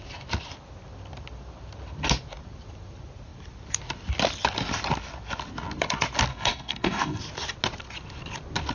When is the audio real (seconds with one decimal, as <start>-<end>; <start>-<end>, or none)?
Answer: 0.0-6.3; 7.2-8.7